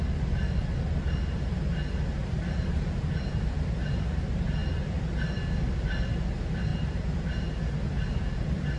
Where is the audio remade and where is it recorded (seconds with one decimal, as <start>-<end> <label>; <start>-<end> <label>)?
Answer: 0.0-2.2 recorded; 2.2-3.0 remade; 3.0-8.8 recorded